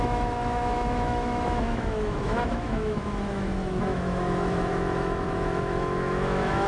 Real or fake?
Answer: fake